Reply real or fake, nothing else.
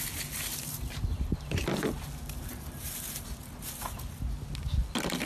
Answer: real